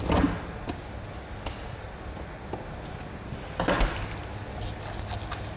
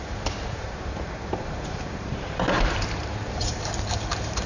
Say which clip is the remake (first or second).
second